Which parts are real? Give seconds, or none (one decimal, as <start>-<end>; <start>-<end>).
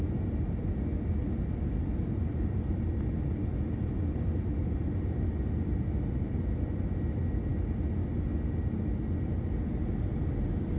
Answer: 0.0-10.8